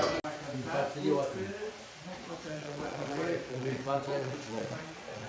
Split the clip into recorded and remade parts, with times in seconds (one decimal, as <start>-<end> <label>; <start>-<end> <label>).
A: 0.0-2.0 recorded; 2.0-5.3 remade